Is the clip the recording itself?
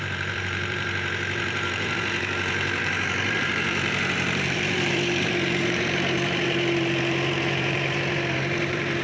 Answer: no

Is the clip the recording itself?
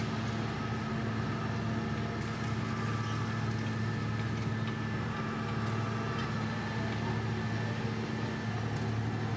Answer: yes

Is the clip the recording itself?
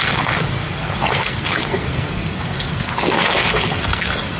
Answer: no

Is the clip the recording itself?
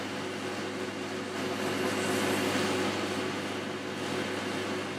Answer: yes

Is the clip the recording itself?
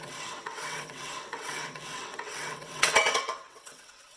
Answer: no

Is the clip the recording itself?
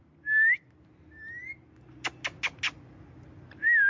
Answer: yes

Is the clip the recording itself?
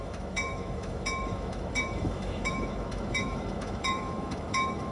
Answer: no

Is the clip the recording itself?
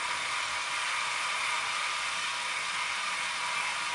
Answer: yes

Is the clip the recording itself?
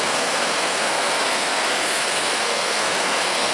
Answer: no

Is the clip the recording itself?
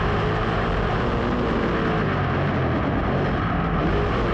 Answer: yes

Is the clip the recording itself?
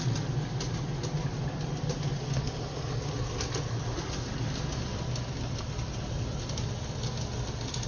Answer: yes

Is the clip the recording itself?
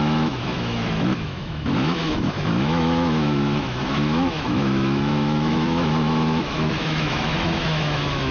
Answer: no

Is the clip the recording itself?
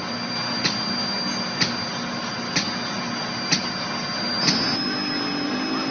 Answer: yes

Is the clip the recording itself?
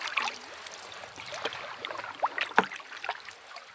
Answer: yes